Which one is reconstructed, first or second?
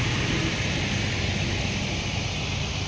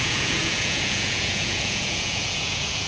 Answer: second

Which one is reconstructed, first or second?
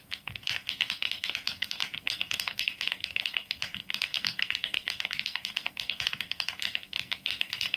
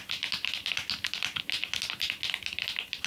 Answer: first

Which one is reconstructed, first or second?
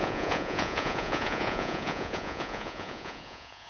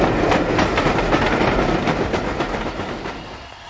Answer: first